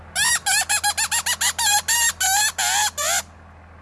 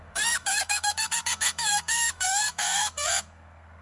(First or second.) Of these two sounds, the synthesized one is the second